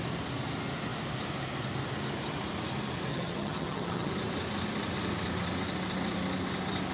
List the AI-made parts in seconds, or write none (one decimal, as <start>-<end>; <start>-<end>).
3.1-4.1